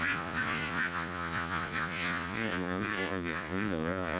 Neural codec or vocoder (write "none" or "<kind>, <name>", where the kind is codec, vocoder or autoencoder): vocoder, Vocos